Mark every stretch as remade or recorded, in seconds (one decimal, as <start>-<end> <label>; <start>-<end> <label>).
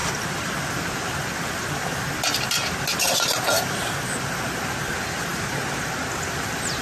0.0-6.8 recorded